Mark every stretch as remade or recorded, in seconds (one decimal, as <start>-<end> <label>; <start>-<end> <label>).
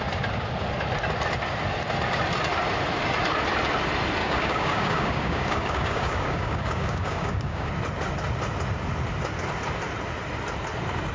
0.0-4.2 recorded; 4.2-7.7 remade; 7.7-11.1 recorded